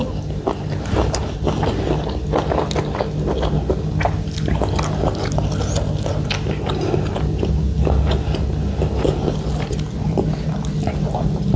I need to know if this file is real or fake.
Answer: real